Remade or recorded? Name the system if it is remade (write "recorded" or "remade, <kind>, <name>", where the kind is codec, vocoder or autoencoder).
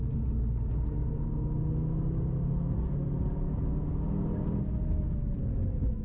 recorded